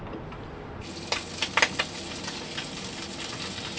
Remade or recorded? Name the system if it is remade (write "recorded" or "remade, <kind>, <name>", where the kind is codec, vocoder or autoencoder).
recorded